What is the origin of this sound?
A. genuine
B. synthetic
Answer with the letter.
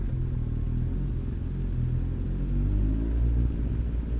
A